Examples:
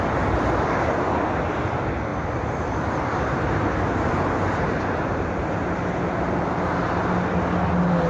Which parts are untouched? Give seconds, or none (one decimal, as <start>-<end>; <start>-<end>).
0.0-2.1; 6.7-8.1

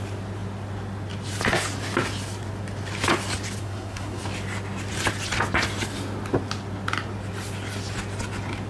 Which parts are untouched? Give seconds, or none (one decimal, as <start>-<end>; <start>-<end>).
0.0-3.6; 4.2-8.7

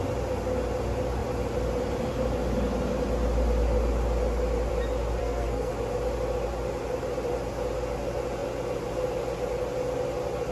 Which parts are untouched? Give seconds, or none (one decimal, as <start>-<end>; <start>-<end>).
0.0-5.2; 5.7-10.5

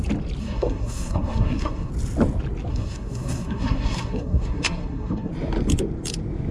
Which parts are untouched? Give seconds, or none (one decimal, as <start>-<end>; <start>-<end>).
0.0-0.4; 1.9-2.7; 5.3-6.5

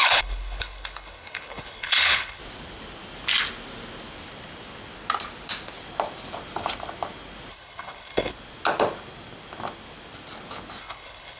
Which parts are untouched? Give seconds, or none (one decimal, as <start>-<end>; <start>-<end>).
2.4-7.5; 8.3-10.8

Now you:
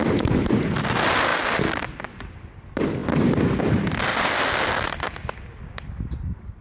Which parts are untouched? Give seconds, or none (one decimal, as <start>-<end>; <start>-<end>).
1.3-2.2; 3.0-3.6; 4.1-5.6

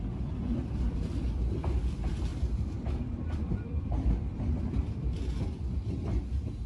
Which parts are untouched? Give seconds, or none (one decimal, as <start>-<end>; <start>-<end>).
0.0-0.6; 1.5-2.3; 5.8-6.7